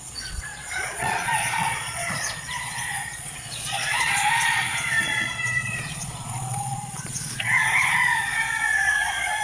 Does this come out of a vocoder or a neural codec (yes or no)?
yes